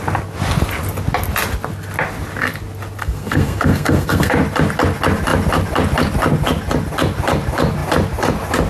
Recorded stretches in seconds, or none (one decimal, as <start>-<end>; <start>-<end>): 0.0-3.0; 4.3-8.7